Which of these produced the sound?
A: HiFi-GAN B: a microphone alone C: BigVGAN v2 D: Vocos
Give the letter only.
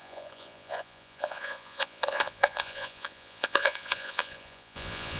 D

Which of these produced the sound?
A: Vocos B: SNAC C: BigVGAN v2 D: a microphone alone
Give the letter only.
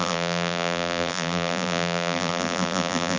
C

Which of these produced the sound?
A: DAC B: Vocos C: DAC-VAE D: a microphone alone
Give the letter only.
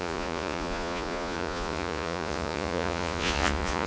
B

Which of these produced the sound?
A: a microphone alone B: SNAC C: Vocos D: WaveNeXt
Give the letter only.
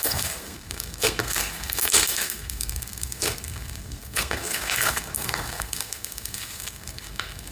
B